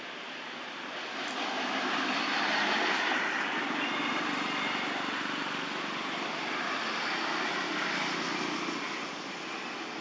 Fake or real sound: real